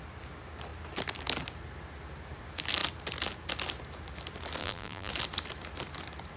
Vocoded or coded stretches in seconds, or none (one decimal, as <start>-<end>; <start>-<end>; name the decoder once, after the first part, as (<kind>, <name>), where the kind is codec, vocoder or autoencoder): 4.6-5.1 (vocoder, BigVGAN v2)